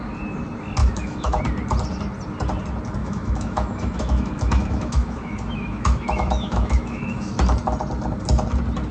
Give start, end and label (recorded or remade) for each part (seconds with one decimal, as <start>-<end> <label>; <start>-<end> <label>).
0.0-0.8 recorded; 0.8-1.4 remade; 1.4-3.0 recorded; 3.0-7.3 remade; 7.3-8.9 recorded

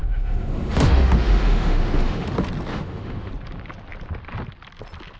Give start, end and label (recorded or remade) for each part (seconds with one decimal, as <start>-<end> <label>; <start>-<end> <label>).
0.0-2.3 remade; 2.3-2.7 recorded; 2.7-3.3 remade; 3.3-5.2 recorded

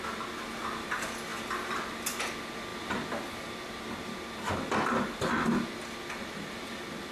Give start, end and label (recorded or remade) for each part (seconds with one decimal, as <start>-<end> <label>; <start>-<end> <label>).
0.0-7.1 recorded

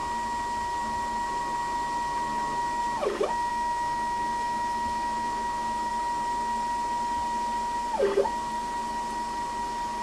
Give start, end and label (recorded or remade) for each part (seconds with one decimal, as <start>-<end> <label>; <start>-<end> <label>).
0.0-3.5 recorded; 3.5-5.9 remade; 5.9-10.0 recorded

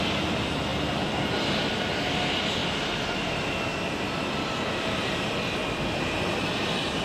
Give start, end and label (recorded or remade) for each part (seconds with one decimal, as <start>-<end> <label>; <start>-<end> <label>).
0.0-7.0 recorded

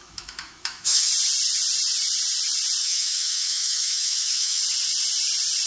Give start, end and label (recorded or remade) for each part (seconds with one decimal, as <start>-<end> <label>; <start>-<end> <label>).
0.0-1.1 remade; 1.1-2.8 recorded; 2.8-4.6 remade; 4.6-5.7 recorded

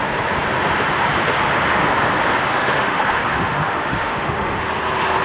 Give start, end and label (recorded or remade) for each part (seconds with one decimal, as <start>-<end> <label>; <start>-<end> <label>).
0.0-2.5 recorded; 2.5-4.6 remade; 4.6-5.2 recorded